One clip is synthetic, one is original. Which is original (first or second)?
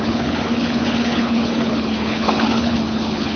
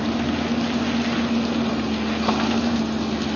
second